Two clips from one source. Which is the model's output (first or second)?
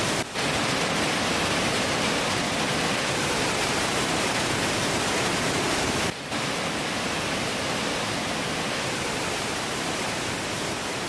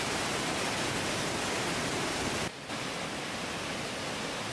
first